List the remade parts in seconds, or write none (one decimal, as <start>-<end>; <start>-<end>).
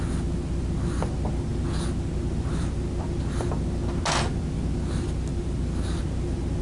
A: none